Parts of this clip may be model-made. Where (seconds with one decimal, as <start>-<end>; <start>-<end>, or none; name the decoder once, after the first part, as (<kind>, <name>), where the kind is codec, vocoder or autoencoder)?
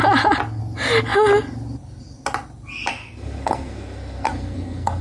2.9-5.0 (codec, SNAC)